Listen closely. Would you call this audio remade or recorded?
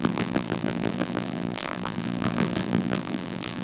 remade